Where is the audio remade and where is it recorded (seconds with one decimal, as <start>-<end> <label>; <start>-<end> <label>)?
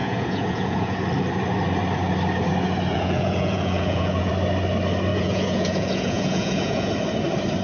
0.0-1.0 remade; 1.0-2.9 recorded; 2.9-4.3 remade; 4.3-5.1 recorded; 5.1-6.9 remade; 6.9-7.6 recorded